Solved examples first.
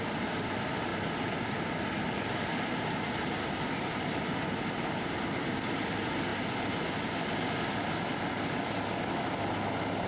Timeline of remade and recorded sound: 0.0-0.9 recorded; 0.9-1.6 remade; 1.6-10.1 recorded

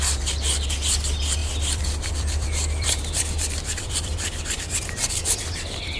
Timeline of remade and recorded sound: 0.0-1.4 recorded; 1.4-4.6 remade; 4.6-6.0 recorded

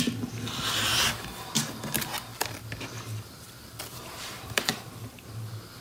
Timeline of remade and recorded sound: 0.0-3.9 recorded; 3.9-4.9 remade; 4.9-5.8 recorded